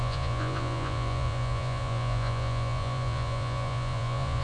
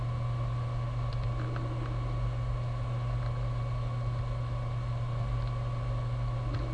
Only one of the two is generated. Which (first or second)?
first